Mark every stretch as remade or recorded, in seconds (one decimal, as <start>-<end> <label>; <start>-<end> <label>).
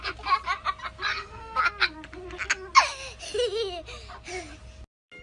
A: 0.0-1.1 recorded; 1.1-1.6 remade; 1.6-5.2 recorded